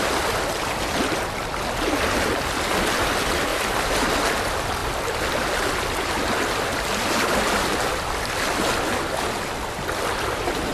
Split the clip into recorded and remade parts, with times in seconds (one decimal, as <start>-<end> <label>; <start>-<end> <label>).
0.0-10.7 recorded